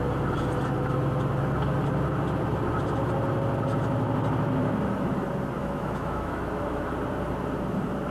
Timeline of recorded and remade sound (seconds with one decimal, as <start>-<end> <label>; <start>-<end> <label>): 0.0-5.6 recorded; 5.6-6.8 remade; 6.8-8.1 recorded